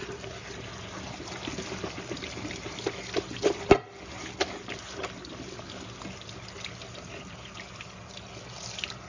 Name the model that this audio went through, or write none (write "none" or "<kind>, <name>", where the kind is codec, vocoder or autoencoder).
none